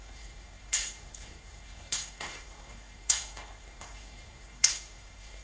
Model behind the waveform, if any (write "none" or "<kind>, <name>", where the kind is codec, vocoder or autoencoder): codec, SNAC